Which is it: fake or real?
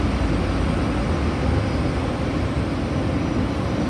real